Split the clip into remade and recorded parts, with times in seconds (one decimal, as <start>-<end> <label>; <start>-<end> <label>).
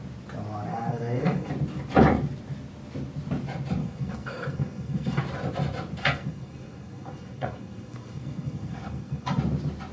0.0-0.7 recorded; 0.7-1.5 remade; 1.5-3.8 recorded; 3.8-5.2 remade; 5.2-6.0 recorded; 6.0-9.4 remade; 9.4-9.9 recorded